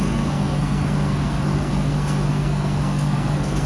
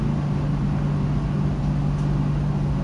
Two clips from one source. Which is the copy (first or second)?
first